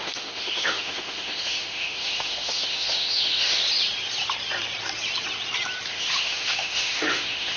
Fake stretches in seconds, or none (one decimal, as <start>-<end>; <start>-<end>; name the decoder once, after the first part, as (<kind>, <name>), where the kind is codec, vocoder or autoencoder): 0.0-3.6 (autoencoder, DAC-VAE); 5.9-7.6